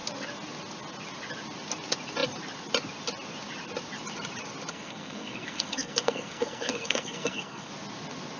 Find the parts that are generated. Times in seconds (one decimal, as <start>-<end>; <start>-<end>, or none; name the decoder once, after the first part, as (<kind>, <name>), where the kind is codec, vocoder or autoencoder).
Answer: 4.7-7.7 (codec, SNAC)